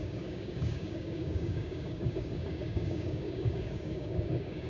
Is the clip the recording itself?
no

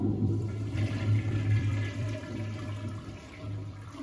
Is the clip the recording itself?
no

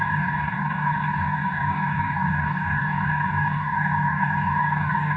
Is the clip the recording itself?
no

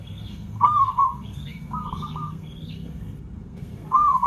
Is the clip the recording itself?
no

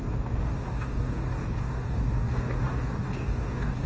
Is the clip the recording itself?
no